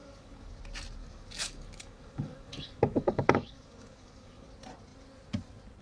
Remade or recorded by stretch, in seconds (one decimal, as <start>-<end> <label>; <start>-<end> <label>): 0.0-0.6 remade; 0.6-1.0 recorded; 1.0-4.5 remade; 4.5-5.8 recorded